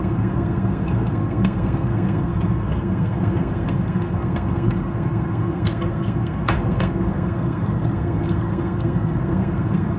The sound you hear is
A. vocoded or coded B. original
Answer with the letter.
A